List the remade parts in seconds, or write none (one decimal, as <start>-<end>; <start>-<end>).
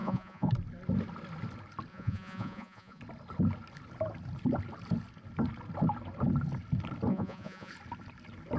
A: 0.0-0.5; 1.9-3.0; 7.1-7.7